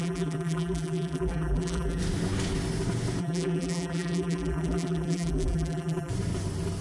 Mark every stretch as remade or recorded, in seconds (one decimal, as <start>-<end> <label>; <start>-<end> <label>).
0.0-2.0 remade; 2.0-3.2 recorded; 3.2-6.1 remade; 6.1-6.8 recorded